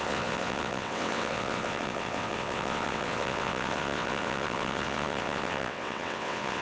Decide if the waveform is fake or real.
fake